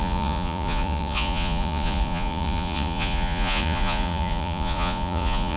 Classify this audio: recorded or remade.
remade